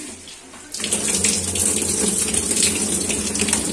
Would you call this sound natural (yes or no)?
yes